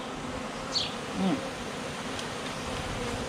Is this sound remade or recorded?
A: recorded